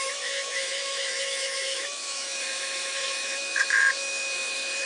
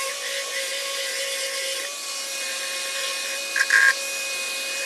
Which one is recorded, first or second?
second